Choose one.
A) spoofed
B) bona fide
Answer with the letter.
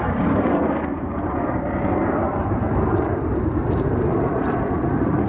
A